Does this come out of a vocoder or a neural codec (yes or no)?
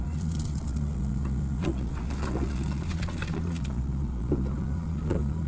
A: yes